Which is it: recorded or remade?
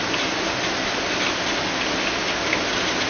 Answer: recorded